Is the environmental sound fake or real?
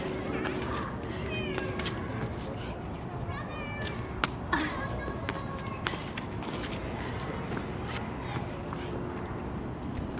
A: real